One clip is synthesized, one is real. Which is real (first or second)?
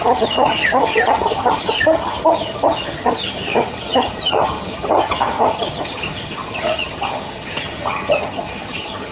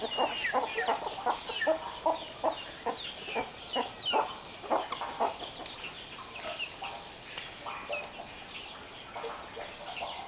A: second